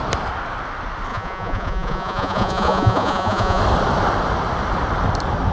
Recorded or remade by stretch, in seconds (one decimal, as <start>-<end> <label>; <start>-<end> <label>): 0.0-1.1 recorded; 1.1-3.6 remade; 3.6-5.5 recorded